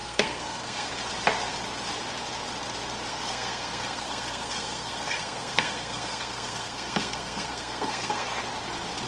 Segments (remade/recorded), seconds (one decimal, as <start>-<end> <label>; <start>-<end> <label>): 0.0-0.9 remade; 0.9-3.1 recorded; 3.1-8.4 remade; 8.4-9.1 recorded